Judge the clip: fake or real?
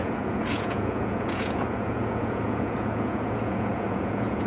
fake